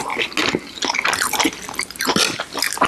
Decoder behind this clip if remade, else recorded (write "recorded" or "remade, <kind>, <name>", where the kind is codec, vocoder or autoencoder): recorded